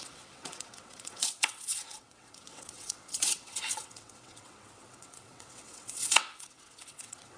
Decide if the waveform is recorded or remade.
remade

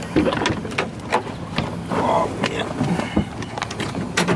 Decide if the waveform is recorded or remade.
recorded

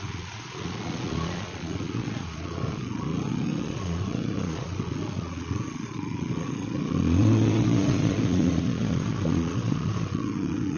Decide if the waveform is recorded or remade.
remade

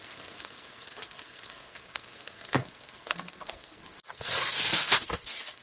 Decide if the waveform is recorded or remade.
remade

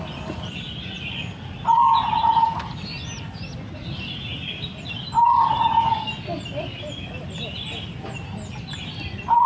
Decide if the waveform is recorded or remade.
recorded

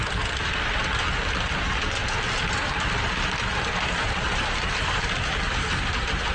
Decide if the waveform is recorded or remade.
recorded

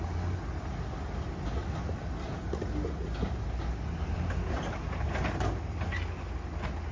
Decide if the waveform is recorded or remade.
recorded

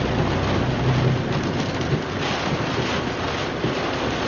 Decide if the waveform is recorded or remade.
recorded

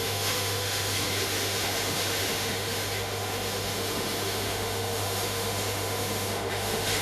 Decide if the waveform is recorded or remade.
remade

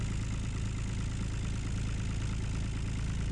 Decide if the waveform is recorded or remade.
recorded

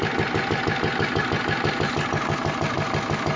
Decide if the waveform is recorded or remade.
recorded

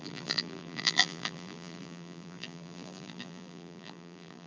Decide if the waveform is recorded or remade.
remade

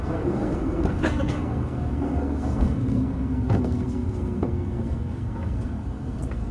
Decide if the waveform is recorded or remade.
remade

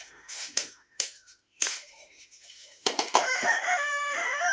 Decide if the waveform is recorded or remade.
remade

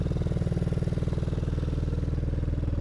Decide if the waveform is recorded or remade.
recorded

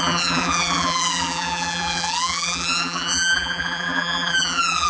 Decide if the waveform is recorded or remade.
remade